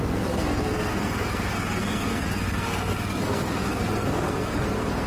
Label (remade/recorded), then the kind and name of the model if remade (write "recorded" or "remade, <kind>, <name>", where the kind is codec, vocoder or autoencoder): remade, codec, SNAC